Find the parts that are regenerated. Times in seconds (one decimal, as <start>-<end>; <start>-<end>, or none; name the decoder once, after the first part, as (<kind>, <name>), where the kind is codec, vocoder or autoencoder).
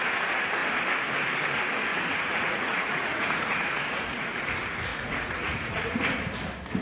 1.9-4.3 (vocoder, Vocos); 4.9-6.0